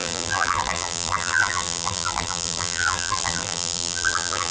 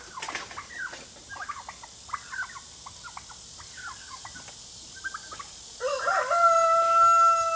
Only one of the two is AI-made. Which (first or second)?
first